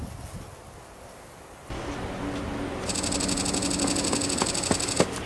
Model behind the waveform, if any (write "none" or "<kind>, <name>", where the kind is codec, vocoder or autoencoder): none